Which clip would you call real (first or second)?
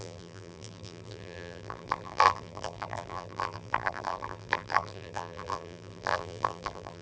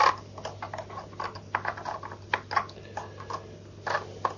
second